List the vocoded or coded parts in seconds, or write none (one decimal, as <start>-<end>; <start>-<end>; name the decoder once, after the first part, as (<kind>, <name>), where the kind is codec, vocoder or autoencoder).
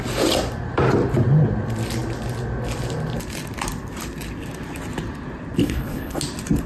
5.6-6.2 (codec, HILCodec)